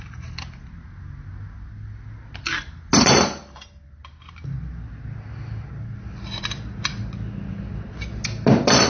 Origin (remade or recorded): recorded